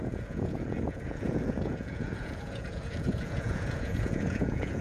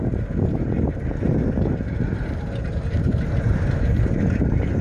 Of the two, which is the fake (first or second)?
first